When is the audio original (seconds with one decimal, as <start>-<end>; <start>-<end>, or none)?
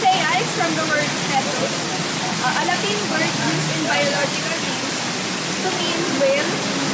0.0-4.2; 4.9-6.9